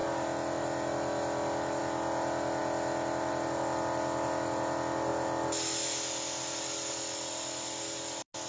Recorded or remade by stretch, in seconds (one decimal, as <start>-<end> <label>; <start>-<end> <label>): 0.0-8.5 recorded